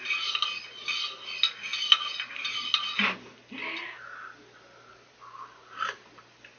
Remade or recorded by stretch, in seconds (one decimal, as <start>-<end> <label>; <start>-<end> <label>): 0.0-6.6 recorded